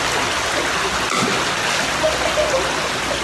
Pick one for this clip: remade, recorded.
recorded